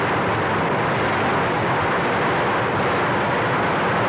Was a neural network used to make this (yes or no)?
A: no